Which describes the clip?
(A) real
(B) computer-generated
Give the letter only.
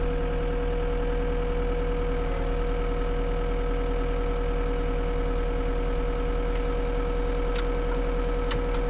A